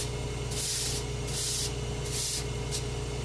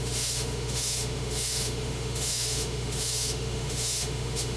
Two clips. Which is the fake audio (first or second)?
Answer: second